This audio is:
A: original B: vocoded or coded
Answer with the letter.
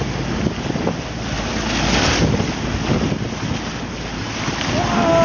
A